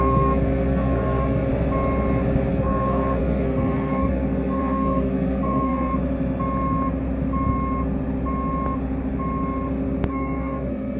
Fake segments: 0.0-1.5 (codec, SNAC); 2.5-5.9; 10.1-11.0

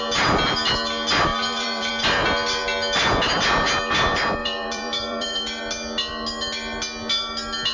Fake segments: 1.3-1.9 (vocoder, BigVGAN v2); 4.4-5.6

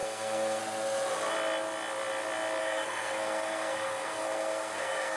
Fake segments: 0.0-0.6 (codec, SNAC); 2.6-5.2